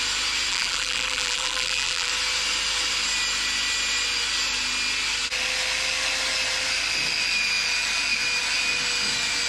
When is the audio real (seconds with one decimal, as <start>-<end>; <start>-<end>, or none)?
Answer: 0.0-0.5; 2.1-9.5

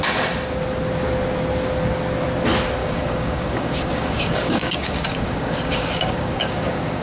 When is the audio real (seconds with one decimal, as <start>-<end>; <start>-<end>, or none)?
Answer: 0.0-2.8